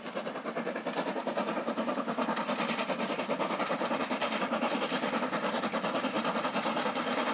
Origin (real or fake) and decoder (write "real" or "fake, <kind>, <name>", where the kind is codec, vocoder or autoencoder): real